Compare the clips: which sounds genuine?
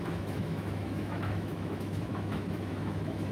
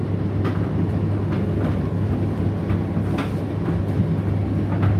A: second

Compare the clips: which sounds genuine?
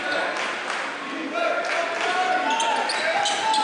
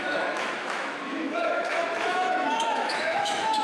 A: first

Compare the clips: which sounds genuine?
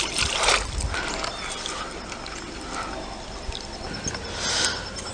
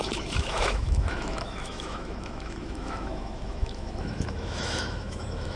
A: first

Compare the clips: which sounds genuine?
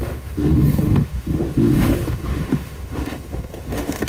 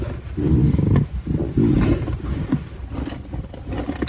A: second